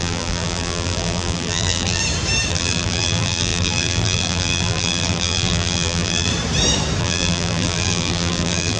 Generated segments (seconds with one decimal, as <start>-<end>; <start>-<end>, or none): 0.0-2.0; 2.5-6.3; 7.0-8.8